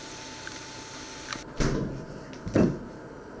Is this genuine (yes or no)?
no